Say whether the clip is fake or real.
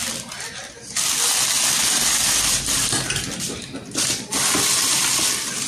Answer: real